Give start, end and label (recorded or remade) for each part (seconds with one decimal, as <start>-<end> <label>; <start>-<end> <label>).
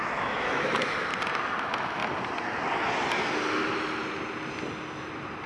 0.0-1.1 remade; 1.1-1.6 recorded; 1.6-2.0 remade; 2.0-5.5 recorded